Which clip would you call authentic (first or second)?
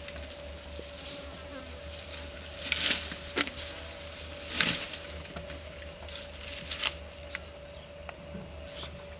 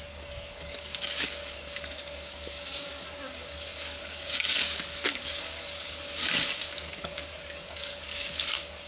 first